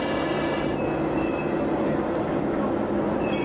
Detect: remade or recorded recorded